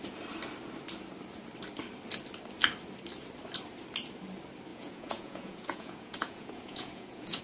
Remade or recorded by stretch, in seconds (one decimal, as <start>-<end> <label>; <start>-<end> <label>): 0.0-4.7 recorded; 4.7-7.4 remade